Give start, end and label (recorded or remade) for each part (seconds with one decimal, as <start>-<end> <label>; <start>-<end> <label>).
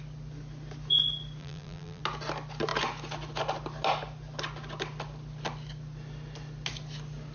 0.0-1.4 recorded; 1.4-2.0 remade; 2.0-7.3 recorded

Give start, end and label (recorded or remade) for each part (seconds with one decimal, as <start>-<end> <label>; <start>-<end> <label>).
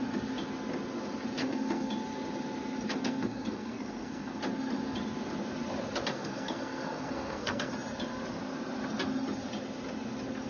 0.0-1.4 recorded; 1.4-1.9 remade; 1.9-3.0 recorded; 3.0-4.4 remade; 4.4-6.1 recorded; 6.1-7.7 remade; 7.7-10.5 recorded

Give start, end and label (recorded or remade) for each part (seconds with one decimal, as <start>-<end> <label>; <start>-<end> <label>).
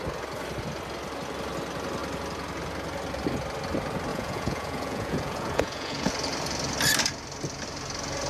0.0-4.1 recorded; 4.1-6.1 remade; 6.1-8.3 recorded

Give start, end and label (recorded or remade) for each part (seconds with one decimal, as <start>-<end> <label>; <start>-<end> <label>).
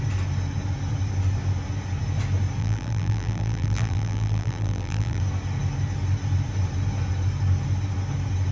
0.0-2.6 recorded; 2.6-5.2 remade; 5.2-8.5 recorded